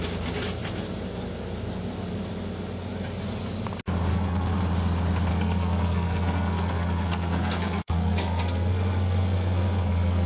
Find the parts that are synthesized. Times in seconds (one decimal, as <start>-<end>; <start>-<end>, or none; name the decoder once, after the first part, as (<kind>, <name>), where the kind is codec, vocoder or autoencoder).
4.1-4.6 (codec, SNAC); 5.3-10.3